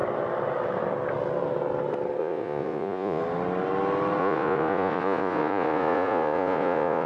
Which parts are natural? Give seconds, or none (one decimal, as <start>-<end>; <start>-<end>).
0.0-2.2; 3.2-4.2